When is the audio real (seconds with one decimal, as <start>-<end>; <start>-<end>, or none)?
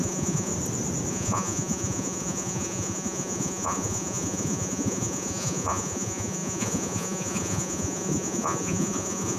0.5-1.1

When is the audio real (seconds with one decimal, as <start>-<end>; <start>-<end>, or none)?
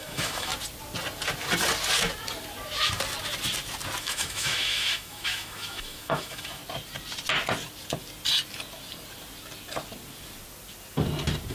0.5-4.0; 6.6-11.5